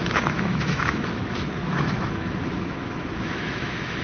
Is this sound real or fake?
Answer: fake